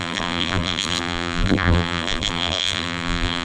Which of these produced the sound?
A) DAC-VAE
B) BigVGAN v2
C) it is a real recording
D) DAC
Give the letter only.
B